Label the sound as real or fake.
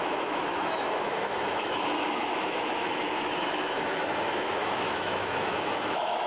fake